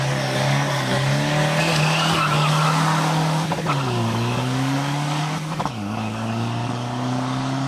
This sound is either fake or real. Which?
fake